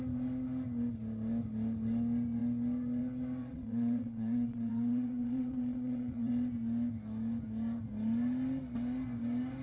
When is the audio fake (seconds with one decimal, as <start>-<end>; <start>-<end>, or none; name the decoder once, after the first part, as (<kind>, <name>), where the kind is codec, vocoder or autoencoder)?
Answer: 3.4-6.3 (vocoder, WaveNeXt)